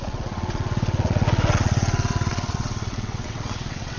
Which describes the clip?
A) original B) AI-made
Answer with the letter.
B